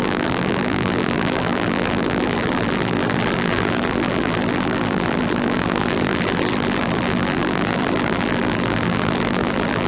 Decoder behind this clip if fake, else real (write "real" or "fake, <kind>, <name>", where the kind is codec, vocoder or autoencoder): fake, vocoder, BigVGAN v2